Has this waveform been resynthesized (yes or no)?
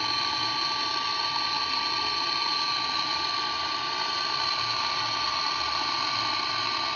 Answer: no